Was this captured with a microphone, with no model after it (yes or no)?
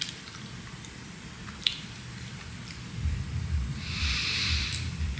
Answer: no